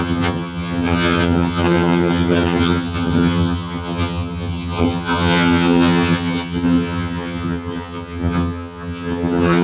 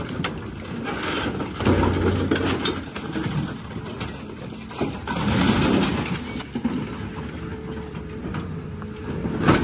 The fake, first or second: first